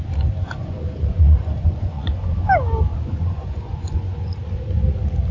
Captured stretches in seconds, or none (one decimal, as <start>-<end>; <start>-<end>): 0.0-0.4; 2.4-2.9; 4.2-5.3